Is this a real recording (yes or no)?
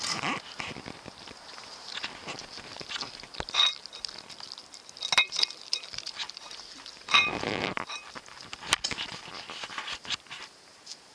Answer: yes